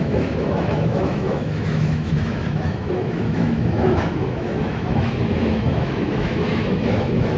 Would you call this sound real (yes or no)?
no